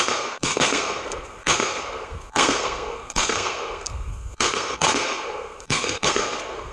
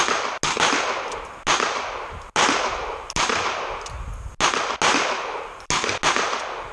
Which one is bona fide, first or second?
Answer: second